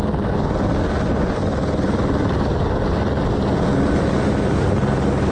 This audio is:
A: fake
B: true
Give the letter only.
B